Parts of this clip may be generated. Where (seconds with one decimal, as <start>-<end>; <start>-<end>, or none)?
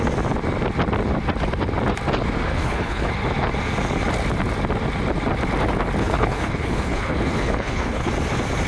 2.5-3.1; 6.0-8.1